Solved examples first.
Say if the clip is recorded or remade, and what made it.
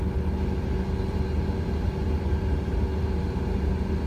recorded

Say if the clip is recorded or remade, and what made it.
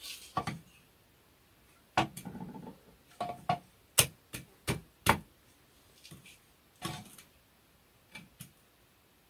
recorded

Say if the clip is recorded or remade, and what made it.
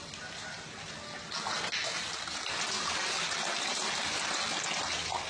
recorded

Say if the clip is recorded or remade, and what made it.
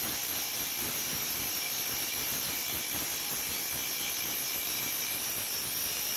recorded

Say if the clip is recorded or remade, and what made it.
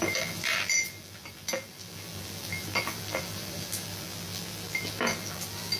remade, vocoder, BigVGAN v2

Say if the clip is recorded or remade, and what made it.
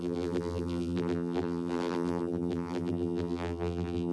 remade, vocoder, BigVGAN v2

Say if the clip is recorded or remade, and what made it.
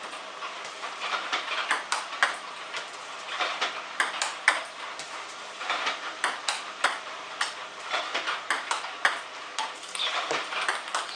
remade, vocoder, BigVGAN v2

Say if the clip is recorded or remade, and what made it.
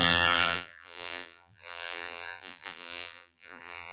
remade, vocoder, BigVGAN v2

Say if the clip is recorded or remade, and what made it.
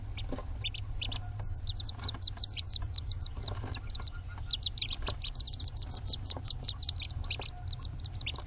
recorded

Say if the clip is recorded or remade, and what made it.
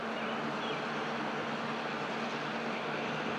recorded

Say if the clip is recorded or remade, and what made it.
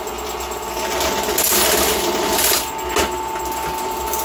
recorded